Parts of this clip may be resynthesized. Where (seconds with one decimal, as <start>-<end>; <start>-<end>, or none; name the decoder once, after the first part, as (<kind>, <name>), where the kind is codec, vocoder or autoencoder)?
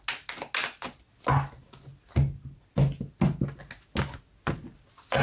none